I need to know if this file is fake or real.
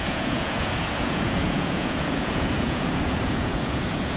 fake